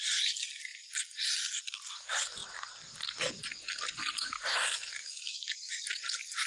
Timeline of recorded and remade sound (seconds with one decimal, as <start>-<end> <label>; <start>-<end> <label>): 0.0-5.0 recorded; 5.0-5.7 remade; 5.7-6.5 recorded